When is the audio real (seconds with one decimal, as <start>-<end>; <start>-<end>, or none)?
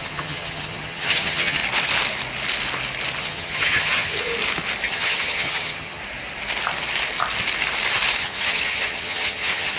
1.6-3.2; 4.3-4.9; 6.0-8.2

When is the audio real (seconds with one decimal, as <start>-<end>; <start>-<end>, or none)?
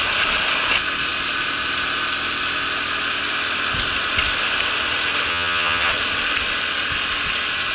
0.0-5.3; 5.9-7.7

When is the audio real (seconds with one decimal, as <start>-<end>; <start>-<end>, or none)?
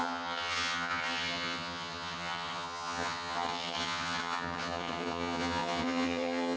none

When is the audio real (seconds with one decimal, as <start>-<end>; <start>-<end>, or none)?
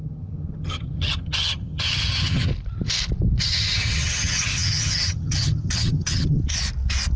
2.5-3.4; 6.4-7.2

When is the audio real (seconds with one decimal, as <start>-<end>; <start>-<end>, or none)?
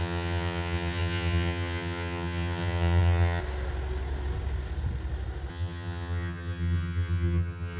3.4-5.5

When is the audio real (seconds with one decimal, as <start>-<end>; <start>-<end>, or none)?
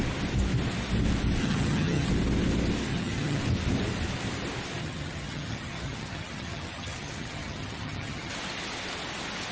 0.0-1.4; 2.1-2.9; 3.4-4.8; 8.3-9.5